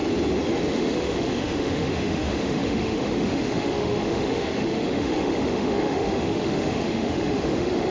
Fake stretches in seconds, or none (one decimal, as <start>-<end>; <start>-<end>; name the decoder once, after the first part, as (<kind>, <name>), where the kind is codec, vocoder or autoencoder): 0.7-7.9 (autoencoder, DAC-VAE)